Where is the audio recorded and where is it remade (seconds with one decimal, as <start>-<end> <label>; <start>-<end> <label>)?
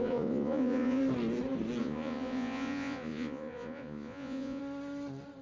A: 0.0-1.0 remade; 1.0-1.8 recorded; 1.8-4.6 remade; 4.6-5.4 recorded